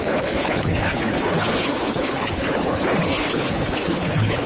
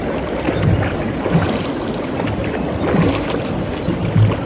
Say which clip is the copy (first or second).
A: first